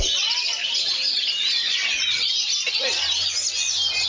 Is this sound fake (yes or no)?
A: no